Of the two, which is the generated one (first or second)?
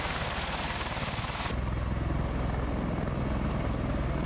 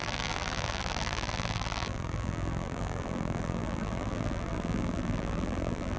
second